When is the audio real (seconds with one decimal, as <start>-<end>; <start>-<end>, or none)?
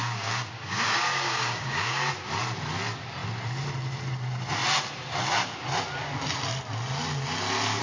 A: 2.1-7.8